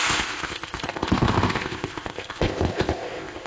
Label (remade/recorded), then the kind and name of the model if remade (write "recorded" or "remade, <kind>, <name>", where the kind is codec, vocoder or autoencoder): remade, codec, ZipCodec